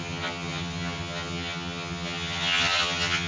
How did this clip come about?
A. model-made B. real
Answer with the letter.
A